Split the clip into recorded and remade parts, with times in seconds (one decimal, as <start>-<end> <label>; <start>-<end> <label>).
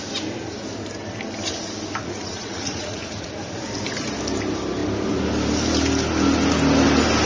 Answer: 0.0-2.0 recorded; 2.0-3.3 remade; 3.3-7.3 recorded